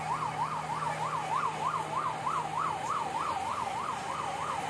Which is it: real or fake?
real